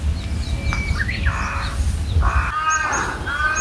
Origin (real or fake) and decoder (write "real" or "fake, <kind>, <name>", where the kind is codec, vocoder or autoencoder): real